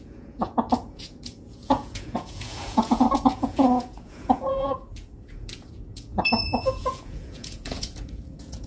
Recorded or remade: remade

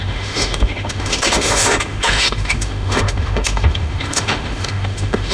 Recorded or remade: remade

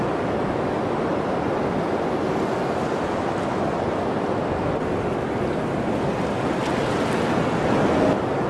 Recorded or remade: recorded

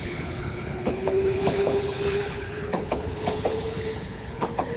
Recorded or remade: remade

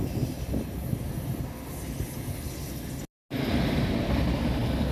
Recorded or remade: recorded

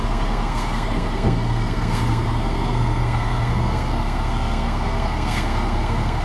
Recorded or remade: remade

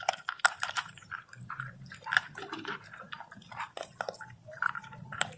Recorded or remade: remade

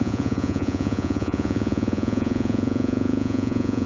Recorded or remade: remade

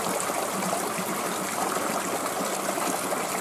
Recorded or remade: recorded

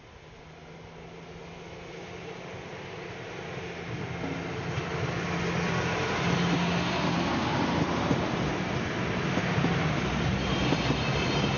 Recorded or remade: recorded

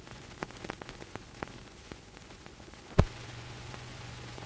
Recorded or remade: remade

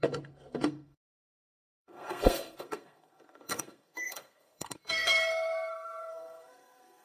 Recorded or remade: remade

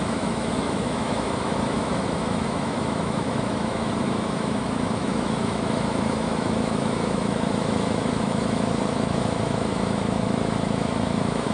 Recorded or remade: remade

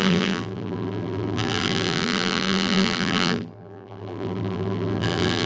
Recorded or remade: remade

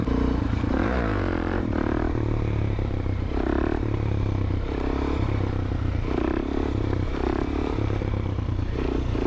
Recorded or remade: remade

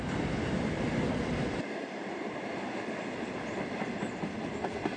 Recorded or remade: recorded